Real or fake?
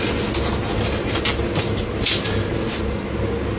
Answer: real